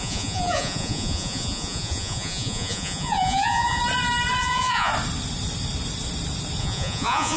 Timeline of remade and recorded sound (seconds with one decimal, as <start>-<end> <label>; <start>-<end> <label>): 0.0-3.8 remade; 3.8-4.4 recorded; 4.4-4.9 remade; 4.9-6.6 recorded; 6.6-7.4 remade